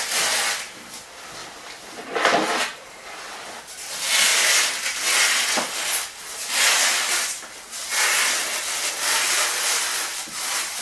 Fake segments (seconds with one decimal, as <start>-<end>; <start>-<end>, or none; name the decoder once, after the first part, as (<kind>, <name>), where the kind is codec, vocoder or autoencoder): 1.4-2.6 (vocoder, BigVGAN v2); 9.9-10.8